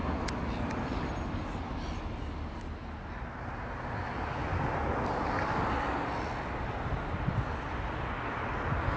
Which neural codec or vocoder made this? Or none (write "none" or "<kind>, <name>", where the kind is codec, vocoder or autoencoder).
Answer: none